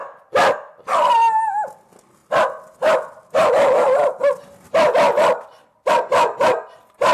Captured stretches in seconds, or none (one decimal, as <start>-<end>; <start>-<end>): 0.0-7.1

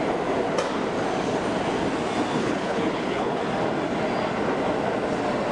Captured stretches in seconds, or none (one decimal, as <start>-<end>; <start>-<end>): 0.0-2.4; 3.4-5.5

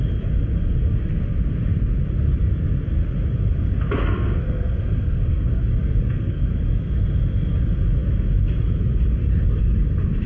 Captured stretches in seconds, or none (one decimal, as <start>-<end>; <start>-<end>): 0.0-4.0; 5.6-6.0; 6.5-10.3

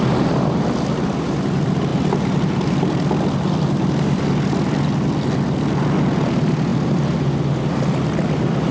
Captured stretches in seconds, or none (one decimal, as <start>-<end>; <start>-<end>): 0.0-8.7

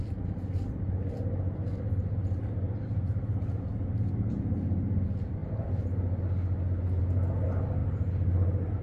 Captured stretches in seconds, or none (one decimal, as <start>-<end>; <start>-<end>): 0.0-8.8

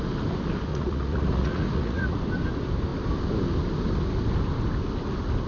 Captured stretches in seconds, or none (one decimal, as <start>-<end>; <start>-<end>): 0.0-0.7; 2.2-5.5